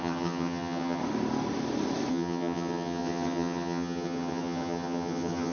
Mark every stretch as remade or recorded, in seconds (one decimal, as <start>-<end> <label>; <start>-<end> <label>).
0.0-1.0 remade; 1.0-2.1 recorded; 2.1-5.5 remade